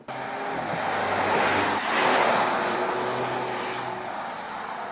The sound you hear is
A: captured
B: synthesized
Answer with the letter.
A